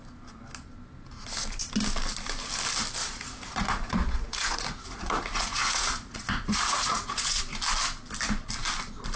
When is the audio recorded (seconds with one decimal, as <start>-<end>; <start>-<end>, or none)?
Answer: 0.0-3.0; 7.4-9.2